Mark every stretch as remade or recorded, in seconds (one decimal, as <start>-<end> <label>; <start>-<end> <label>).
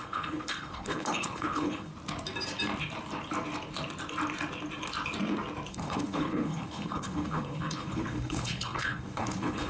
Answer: 0.0-1.9 remade; 1.9-5.7 recorded; 5.7-9.7 remade